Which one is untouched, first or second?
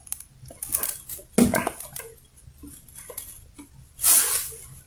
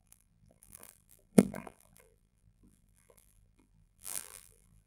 first